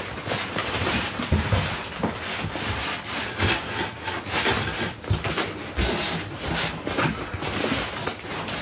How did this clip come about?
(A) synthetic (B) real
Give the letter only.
B